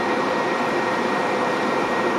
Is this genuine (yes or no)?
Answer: no